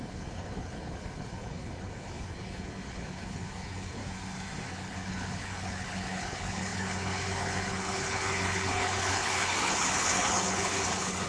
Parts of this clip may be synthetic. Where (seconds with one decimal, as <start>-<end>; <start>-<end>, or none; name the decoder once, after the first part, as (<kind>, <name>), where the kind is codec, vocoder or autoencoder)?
0.0-4.0 (codec, HILCodec); 4.7-11.3